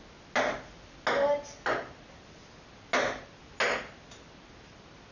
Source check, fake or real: real